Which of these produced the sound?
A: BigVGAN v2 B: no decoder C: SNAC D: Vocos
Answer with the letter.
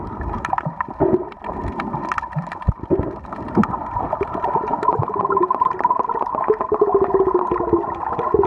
A